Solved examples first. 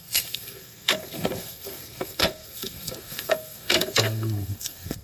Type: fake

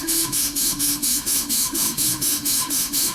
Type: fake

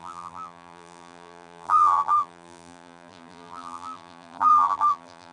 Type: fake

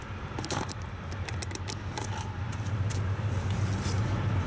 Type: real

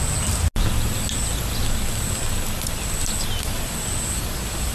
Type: real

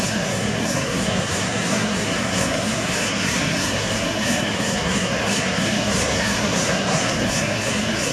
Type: fake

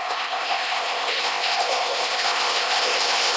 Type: fake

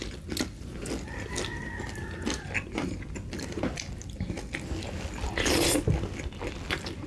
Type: real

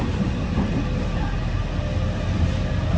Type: real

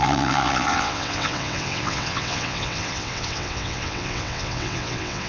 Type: fake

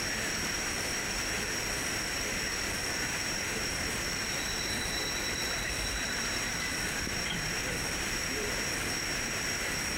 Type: fake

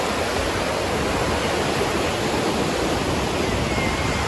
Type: real